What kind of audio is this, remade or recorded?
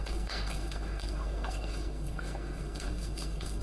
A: remade